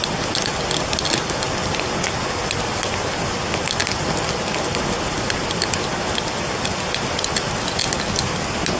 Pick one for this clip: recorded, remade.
recorded